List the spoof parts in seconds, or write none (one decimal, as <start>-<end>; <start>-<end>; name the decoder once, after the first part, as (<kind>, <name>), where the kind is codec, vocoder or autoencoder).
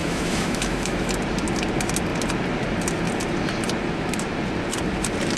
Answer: 0.0-1.1 (autoencoder, DAC-VAE)